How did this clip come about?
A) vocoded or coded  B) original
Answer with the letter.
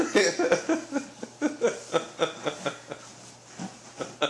B